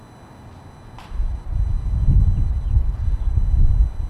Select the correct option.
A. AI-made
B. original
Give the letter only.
B